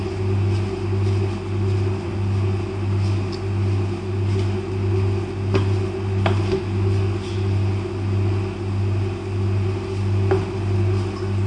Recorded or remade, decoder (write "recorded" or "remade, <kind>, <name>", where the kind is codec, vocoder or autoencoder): recorded